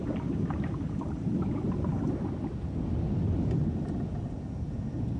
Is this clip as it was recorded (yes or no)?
yes